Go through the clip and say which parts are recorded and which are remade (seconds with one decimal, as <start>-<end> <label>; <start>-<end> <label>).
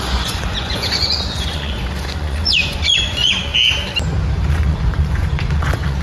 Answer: 0.0-3.5 remade; 3.5-4.5 recorded; 4.5-6.0 remade